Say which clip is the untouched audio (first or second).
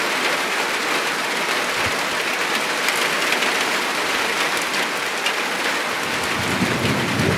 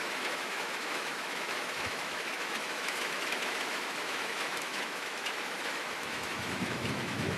first